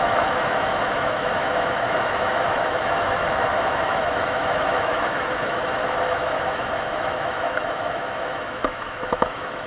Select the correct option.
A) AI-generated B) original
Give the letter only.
A